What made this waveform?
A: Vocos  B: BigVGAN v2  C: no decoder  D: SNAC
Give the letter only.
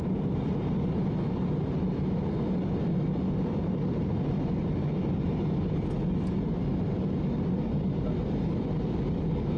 C